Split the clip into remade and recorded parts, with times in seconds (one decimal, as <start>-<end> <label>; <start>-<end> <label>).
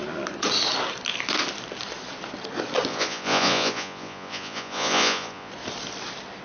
0.0-2.9 recorded; 2.9-5.5 remade; 5.5-6.4 recorded